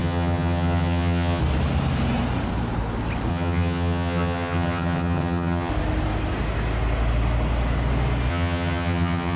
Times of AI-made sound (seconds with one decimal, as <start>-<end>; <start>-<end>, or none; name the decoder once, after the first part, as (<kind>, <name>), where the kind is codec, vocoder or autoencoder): 0.0-1.4 (vocoder, HiFi-GAN); 3.3-5.7; 8.3-9.4